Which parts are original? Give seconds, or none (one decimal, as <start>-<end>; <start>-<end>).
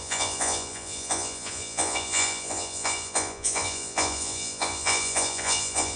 none